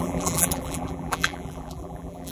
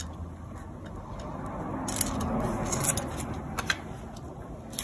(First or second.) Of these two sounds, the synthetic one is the first